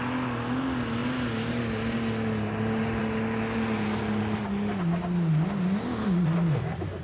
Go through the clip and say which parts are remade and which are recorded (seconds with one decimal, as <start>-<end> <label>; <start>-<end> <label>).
0.0-7.0 recorded